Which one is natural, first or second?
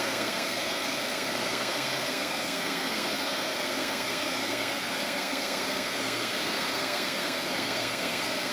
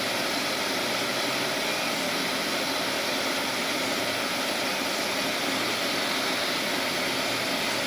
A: second